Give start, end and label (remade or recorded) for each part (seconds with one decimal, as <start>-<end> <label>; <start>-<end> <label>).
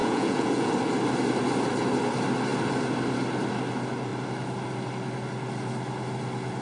0.0-0.7 remade; 0.7-6.6 recorded